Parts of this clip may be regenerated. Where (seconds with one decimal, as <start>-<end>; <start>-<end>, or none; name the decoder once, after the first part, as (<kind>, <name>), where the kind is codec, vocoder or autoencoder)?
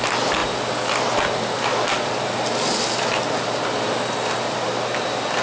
none